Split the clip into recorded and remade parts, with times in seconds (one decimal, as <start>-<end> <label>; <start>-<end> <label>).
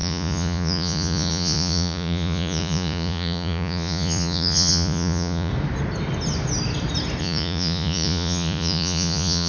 0.0-5.5 remade; 5.5-7.2 recorded; 7.2-9.5 remade